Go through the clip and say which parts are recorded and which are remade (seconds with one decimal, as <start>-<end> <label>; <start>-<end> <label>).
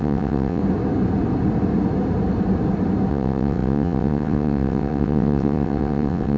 0.0-0.6 remade; 0.6-3.1 recorded; 3.1-6.4 remade